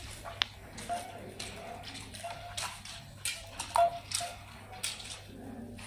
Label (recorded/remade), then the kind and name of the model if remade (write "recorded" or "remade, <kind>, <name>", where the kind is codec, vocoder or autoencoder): recorded